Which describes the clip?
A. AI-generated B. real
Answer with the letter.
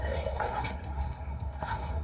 A